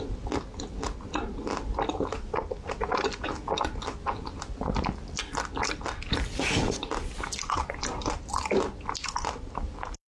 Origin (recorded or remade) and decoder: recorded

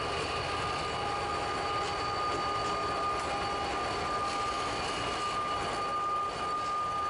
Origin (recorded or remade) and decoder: recorded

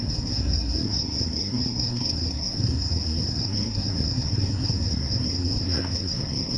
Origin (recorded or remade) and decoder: remade, codec, SNAC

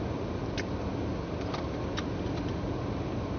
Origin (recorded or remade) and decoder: recorded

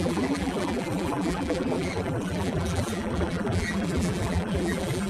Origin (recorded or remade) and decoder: remade, vocoder, BigVGAN v2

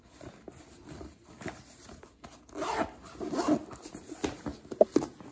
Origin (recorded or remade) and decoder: recorded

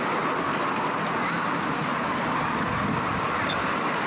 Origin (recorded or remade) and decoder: recorded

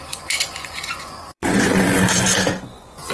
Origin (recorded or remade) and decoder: remade, vocoder, Vocos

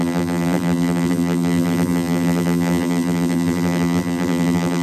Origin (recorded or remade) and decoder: remade, vocoder, BigVGAN v2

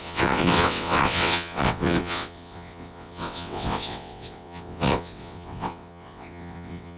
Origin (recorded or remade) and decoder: remade, vocoder, WaveNeXt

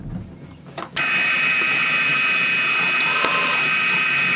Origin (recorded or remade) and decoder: recorded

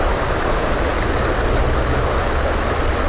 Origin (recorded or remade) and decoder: recorded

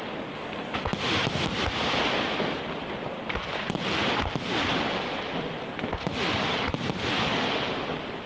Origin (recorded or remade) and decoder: recorded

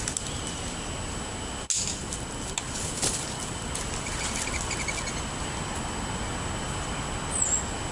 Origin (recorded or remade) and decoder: recorded